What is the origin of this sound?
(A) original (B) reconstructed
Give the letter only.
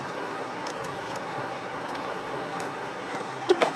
B